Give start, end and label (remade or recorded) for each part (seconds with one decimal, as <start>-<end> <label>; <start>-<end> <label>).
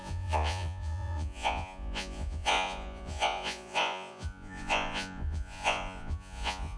0.0-6.8 remade